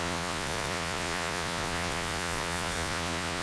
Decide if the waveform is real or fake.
fake